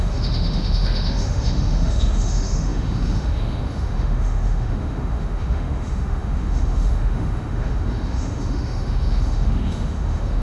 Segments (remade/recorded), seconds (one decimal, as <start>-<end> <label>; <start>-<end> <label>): 0.0-10.4 remade